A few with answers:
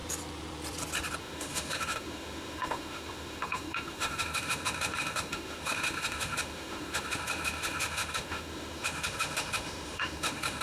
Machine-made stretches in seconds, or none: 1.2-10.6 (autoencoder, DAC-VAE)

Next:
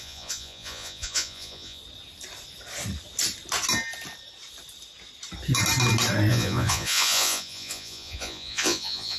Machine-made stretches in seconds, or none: 0.0-1.8 (vocoder, Vocos); 6.3-9.2

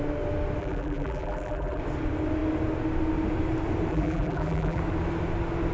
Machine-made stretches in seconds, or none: 0.6-1.8 (vocoder, BigVGAN v2); 3.9-4.8

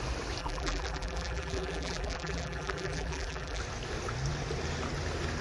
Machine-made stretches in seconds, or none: 0.4-3.6 (vocoder, BigVGAN v2)

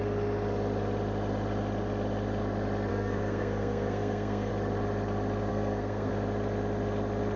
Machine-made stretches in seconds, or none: 2.9-4.5 (codec, SNAC); 5.5-6.1